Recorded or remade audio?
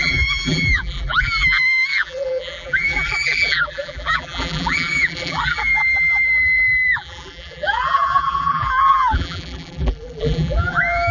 remade